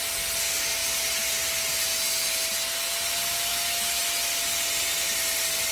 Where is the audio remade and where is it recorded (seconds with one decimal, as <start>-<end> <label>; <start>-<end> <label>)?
0.0-3.5 recorded; 3.5-4.0 remade; 4.0-5.7 recorded